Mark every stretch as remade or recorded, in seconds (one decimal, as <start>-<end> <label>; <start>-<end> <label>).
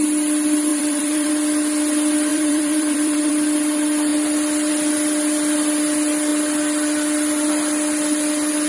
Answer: 0.0-0.7 recorded; 0.7-1.3 remade; 1.3-2.3 recorded; 2.3-3.3 remade; 3.3-8.7 recorded